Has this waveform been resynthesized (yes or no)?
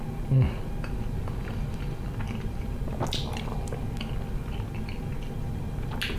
no